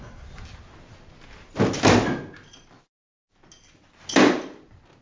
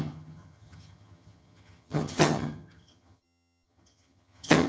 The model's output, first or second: second